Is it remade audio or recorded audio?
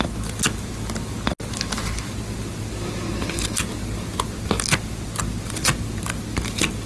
recorded